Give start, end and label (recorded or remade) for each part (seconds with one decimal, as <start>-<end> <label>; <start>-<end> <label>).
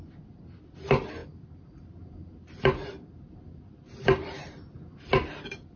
0.0-5.8 recorded